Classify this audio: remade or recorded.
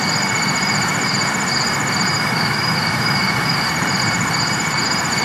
remade